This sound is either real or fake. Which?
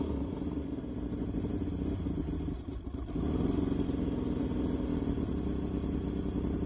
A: real